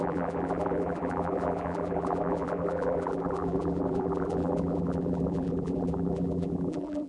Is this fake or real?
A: fake